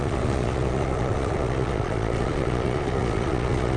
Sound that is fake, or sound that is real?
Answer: fake